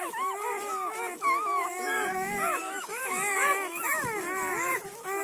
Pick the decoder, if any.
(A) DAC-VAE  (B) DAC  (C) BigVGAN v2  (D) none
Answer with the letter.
A